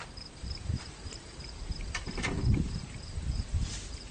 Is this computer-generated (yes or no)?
yes